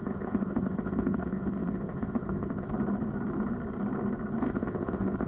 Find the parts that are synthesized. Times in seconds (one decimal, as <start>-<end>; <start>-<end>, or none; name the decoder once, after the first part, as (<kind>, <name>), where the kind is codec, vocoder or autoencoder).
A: 0.0-2.7 (codec, ZipCodec); 4.4-5.3